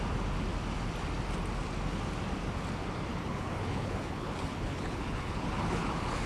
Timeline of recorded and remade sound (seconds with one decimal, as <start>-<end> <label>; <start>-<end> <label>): 0.0-3.1 recorded; 3.1-6.3 remade